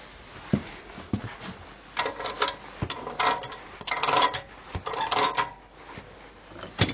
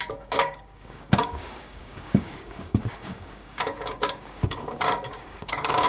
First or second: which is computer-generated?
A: second